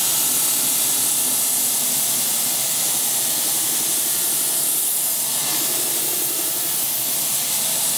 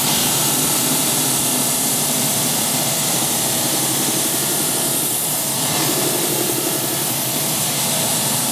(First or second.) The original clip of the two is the first